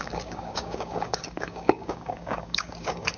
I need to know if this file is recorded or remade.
remade